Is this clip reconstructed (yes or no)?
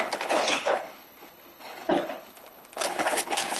yes